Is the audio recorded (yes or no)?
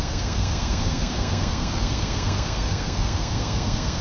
no